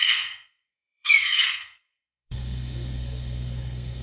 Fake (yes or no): yes